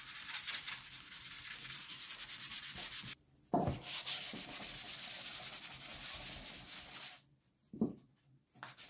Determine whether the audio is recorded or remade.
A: remade